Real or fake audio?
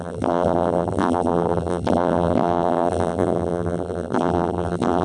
fake